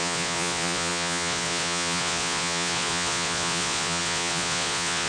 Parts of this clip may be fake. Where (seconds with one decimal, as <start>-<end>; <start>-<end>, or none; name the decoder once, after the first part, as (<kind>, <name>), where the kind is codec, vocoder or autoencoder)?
0.0-5.1 (vocoder, Vocos)